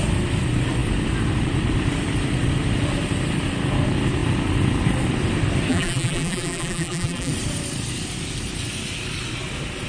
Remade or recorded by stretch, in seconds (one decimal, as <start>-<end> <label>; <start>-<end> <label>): 0.0-5.7 recorded; 5.7-7.3 remade; 7.3-9.9 recorded